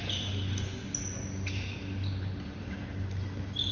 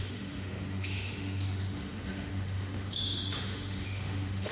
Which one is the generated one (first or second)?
second